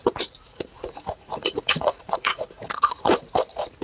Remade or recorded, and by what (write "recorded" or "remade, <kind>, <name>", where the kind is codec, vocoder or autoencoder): remade, vocoder, Vocos